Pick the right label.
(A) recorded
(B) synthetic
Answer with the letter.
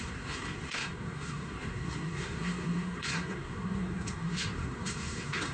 B